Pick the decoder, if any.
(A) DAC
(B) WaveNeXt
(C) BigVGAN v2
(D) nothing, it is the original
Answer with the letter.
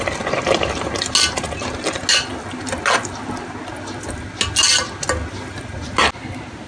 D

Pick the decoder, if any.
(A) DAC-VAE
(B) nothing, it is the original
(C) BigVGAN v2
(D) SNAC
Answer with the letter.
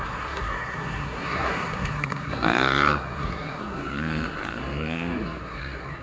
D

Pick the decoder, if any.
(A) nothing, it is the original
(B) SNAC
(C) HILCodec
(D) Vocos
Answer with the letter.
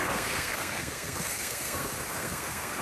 B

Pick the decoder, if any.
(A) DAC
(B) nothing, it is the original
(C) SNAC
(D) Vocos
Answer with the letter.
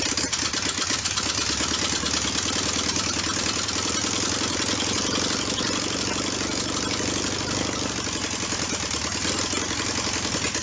B